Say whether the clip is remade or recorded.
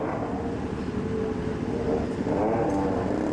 recorded